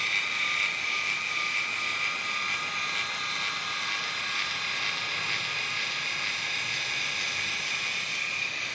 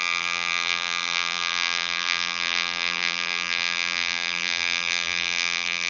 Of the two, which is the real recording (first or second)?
first